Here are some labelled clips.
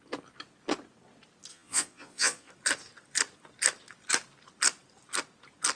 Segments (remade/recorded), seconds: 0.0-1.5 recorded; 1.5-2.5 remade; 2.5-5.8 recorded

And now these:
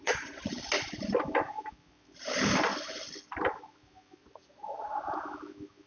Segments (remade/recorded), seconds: 0.0-0.6 remade; 0.6-4.2 recorded; 4.2-5.1 remade; 5.1-5.9 recorded